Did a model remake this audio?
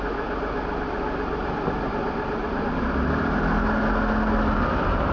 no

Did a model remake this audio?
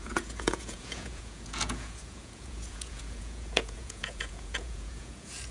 yes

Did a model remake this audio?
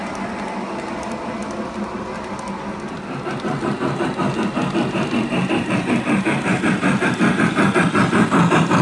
no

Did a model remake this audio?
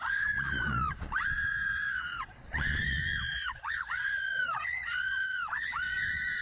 yes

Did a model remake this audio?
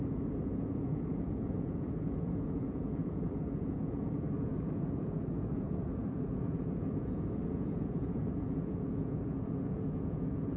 yes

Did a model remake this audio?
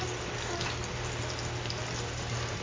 no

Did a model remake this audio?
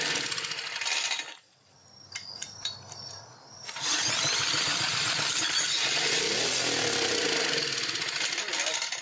no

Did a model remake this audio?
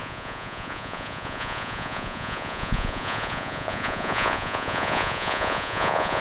yes